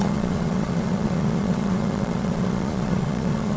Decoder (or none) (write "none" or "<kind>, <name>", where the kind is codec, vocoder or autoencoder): vocoder, Vocos